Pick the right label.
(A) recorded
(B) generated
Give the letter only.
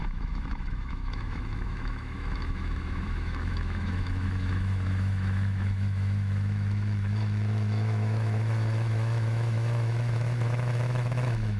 B